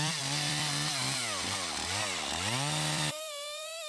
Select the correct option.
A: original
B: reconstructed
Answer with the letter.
B